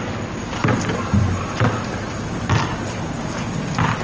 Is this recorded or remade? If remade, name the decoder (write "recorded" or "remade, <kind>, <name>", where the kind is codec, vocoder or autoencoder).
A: recorded